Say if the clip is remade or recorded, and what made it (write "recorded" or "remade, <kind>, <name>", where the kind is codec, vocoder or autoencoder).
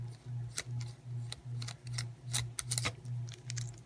recorded